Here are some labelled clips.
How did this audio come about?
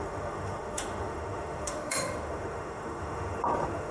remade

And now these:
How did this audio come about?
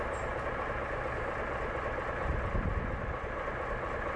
recorded